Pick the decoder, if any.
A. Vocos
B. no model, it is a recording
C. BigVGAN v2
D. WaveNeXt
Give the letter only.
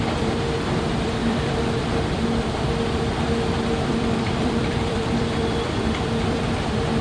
C